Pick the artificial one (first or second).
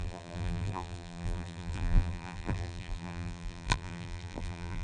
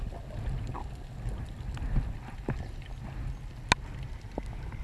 first